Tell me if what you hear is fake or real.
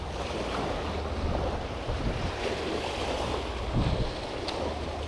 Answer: real